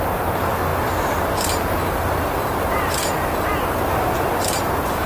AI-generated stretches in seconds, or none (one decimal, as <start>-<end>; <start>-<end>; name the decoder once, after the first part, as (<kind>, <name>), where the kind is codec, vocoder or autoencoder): none